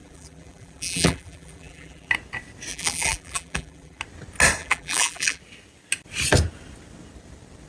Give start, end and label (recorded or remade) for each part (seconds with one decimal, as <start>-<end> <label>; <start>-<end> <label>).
0.0-2.1 remade; 2.1-2.7 recorded; 2.7-4.0 remade; 4.0-4.6 recorded; 4.6-5.4 remade; 5.4-7.7 recorded